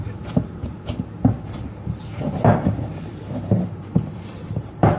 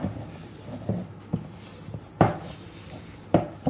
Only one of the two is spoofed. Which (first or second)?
first